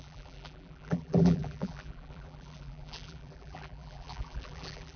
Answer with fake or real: fake